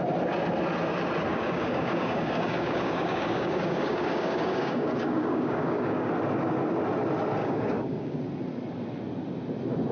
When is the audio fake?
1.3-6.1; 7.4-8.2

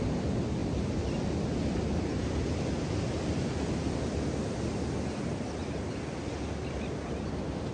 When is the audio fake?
none

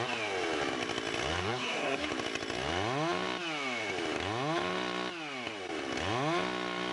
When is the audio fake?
1.4-2.1

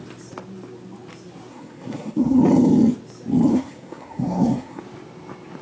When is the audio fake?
1.5-2.4; 3.5-4.8

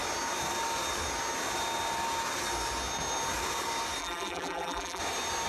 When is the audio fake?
4.0-5.0

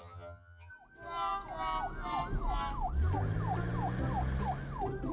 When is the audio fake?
0.0-0.7

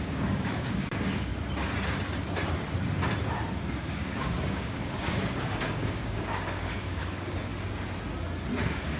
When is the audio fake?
0.0-1.3; 3.6-7.5; 8.6-9.0